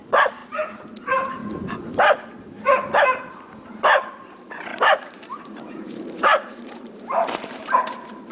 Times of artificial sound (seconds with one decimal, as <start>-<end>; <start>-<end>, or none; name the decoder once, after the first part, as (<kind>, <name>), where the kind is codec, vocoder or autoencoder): 0.0-0.4 (vocoder, BigVGAN v2); 1.0-1.4; 3.0-8.3